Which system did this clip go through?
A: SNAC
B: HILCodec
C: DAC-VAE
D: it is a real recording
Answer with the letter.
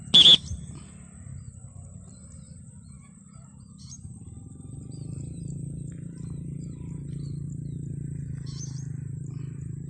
D